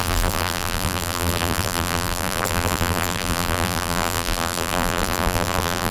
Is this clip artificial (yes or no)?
yes